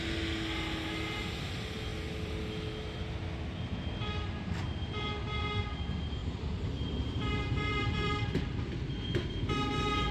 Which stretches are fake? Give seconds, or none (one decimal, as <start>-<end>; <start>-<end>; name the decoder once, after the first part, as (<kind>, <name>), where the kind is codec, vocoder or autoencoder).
1.9-2.4 (vocoder, BigVGAN v2); 6.2-9.4